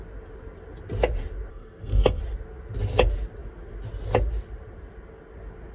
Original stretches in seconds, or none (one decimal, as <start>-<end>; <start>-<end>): 0.0-1.5; 2.2-5.7